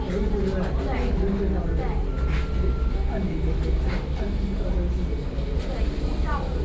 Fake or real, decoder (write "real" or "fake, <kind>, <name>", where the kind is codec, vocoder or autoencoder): real